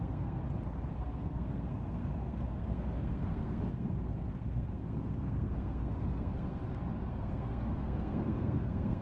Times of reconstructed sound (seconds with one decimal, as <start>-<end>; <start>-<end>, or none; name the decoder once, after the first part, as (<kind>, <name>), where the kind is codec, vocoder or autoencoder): 0.0-0.4 (codec, SNAC); 0.9-6.6; 7.1-9.0